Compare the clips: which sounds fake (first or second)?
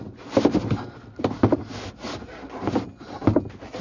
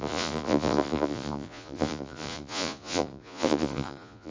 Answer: second